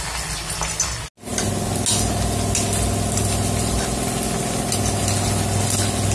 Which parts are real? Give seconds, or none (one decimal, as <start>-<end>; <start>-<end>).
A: 0.0-6.1